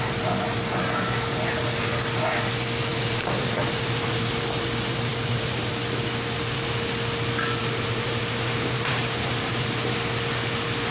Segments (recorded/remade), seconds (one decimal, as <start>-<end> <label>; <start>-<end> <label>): 0.0-2.9 recorded; 2.9-4.4 remade; 4.4-5.1 recorded; 5.1-5.7 remade; 5.7-7.6 recorded; 7.6-10.1 remade; 10.1-10.9 recorded